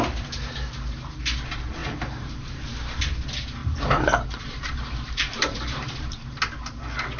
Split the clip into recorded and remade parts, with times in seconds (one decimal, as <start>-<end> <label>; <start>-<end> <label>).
0.0-1.8 recorded; 1.8-2.6 remade; 2.6-3.6 recorded; 3.6-6.4 remade; 6.4-7.2 recorded

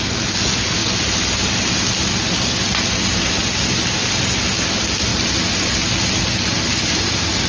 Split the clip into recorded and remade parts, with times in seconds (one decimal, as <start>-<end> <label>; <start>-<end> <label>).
0.0-7.5 recorded

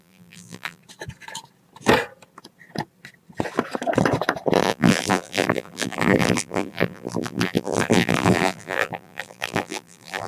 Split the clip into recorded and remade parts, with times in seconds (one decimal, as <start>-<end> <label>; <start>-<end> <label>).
0.0-0.8 remade; 0.8-4.6 recorded; 4.6-10.3 remade